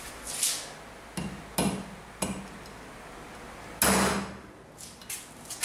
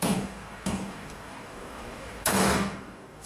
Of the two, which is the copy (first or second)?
second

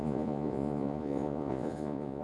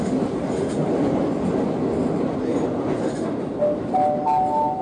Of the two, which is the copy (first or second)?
first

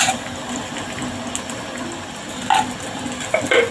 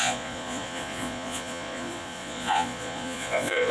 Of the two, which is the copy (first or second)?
second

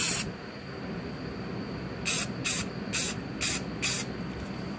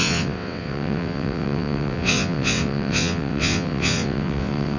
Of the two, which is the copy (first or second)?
second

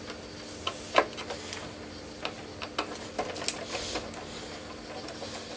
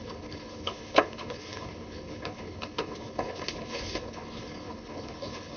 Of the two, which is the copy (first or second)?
second